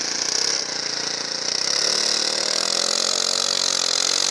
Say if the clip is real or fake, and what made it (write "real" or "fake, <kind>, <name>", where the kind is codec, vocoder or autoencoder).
real